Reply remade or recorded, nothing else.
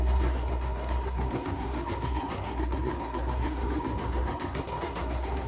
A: remade